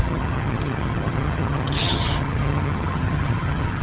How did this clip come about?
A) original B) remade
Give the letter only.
B